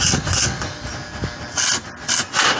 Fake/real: real